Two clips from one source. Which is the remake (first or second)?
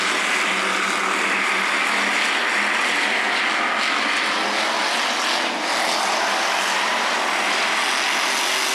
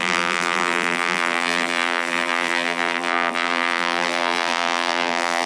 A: second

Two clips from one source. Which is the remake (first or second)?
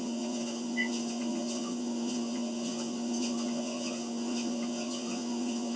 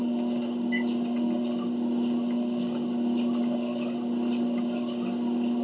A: first